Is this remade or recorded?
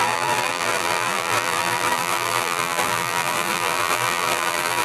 remade